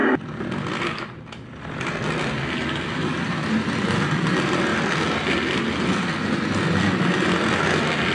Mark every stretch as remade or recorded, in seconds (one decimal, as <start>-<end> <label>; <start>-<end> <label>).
0.0-8.1 recorded